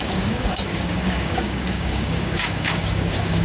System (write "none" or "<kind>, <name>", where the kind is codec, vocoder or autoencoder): codec, DAC